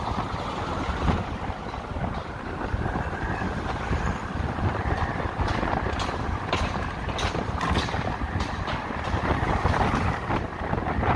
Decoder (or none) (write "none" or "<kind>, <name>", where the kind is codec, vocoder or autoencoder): none